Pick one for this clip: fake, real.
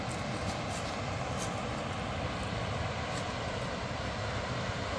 real